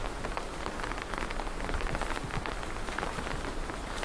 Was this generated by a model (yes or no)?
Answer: no